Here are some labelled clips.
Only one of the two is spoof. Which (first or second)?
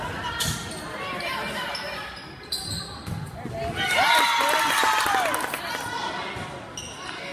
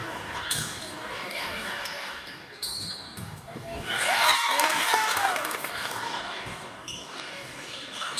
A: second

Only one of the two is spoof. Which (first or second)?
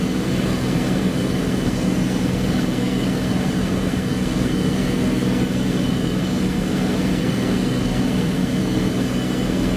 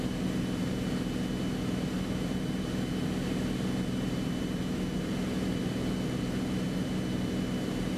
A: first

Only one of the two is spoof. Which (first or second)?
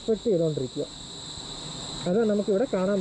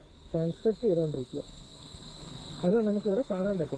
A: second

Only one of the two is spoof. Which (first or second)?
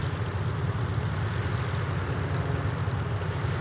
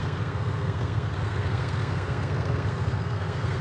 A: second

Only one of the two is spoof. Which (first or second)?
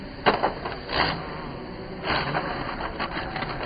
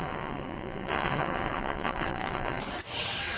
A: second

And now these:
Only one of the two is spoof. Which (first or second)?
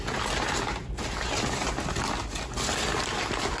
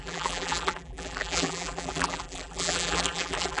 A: second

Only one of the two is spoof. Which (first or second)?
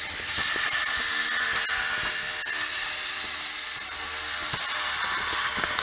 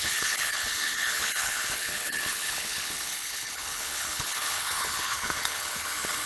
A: second